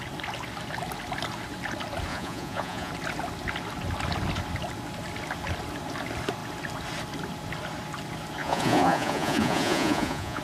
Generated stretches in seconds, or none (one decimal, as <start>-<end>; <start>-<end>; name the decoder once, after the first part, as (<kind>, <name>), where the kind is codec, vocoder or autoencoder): 2.1-2.9 (vocoder, Vocos); 8.4-10.4